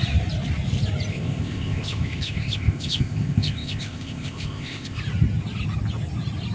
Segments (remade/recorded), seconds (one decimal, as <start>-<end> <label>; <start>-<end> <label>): 0.0-1.1 recorded; 1.1-5.0 remade; 5.0-6.5 recorded